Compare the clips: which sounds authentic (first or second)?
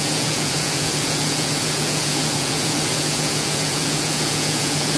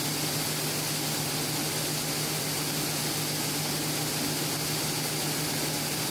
second